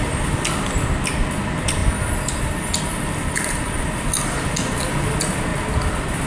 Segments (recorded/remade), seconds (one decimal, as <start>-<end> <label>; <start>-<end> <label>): 0.0-6.3 recorded